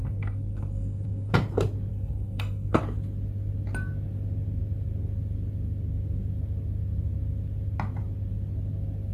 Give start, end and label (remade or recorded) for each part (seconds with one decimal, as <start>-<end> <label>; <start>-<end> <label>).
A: 0.0-1.3 remade; 1.3-1.9 recorded; 1.9-2.8 remade; 2.8-9.1 recorded